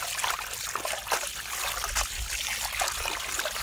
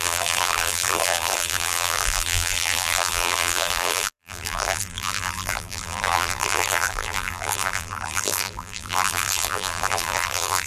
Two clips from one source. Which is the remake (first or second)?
second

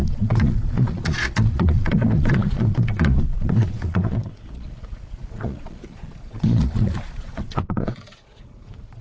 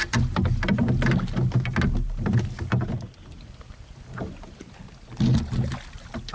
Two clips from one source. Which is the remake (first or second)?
first